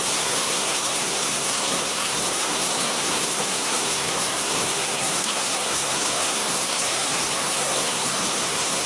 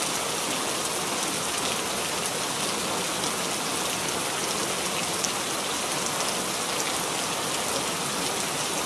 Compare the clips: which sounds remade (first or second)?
first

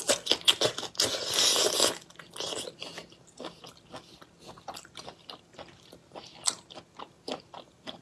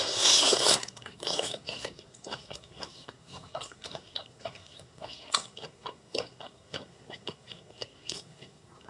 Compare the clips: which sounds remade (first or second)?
second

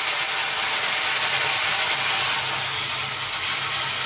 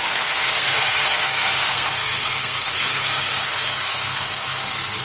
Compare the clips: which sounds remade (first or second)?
second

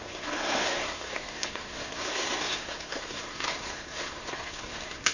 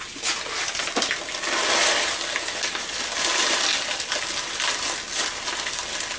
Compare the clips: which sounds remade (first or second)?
first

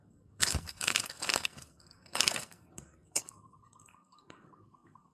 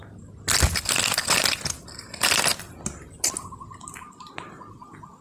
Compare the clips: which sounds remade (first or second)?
first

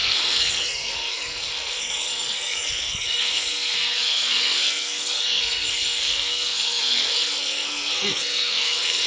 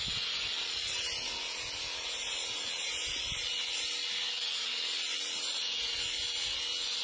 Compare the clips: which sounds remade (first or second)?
first